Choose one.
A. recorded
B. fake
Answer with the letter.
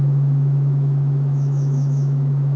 B